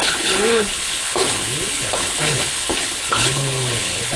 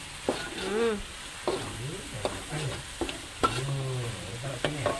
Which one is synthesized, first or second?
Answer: first